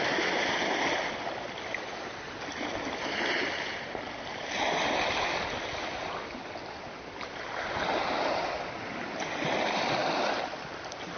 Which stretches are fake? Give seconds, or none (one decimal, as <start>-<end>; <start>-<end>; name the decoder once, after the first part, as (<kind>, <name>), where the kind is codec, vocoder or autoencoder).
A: none